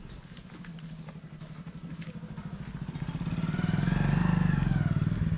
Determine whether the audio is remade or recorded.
recorded